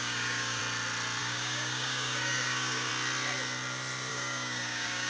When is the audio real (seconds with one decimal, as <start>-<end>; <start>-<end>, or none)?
0.6-1.2; 2.9-4.1